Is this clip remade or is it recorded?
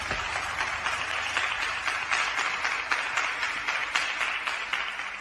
recorded